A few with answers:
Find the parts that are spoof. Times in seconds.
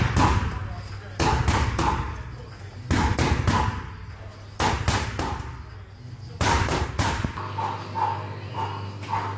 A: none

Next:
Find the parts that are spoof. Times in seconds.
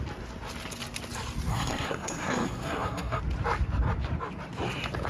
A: 1.5-3.2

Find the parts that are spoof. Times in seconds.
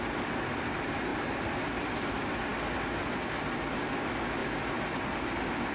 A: none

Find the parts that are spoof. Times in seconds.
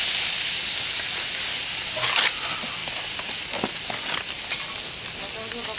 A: none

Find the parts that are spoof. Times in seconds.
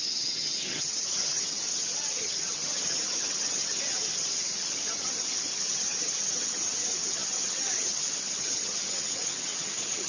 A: 0.0-10.1